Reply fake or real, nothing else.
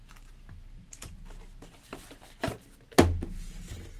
real